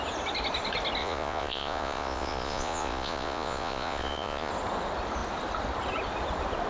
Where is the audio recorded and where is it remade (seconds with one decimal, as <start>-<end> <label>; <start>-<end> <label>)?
0.0-1.0 recorded; 1.0-4.5 remade; 4.5-6.7 recorded